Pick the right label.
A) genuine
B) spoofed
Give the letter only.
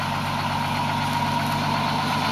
A